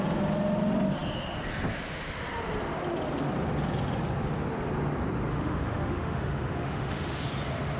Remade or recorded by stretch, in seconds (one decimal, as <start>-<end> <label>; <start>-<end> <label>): 0.0-5.3 recorded; 5.3-7.2 remade; 7.2-7.8 recorded